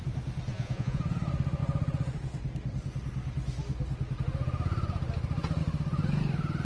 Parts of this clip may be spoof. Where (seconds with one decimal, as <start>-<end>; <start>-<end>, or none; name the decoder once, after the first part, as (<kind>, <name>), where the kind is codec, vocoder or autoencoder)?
0.5-1.0 (vocoder, Vocos)